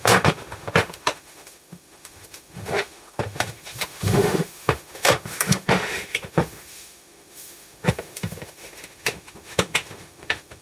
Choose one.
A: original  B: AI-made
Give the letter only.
B